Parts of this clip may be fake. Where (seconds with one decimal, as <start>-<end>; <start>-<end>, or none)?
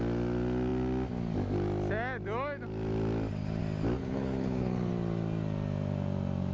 4.0-4.9